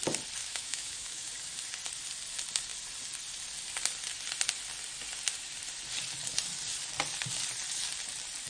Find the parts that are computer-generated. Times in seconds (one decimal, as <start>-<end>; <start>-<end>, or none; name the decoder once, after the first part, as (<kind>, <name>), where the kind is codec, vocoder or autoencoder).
0.4-1.3 (autoencoder, DAC-VAE)